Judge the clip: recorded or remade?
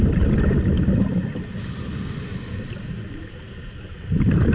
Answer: recorded